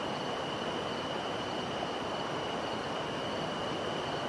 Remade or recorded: recorded